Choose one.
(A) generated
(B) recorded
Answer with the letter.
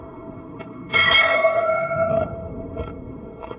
A